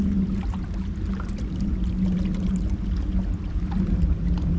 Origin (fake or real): real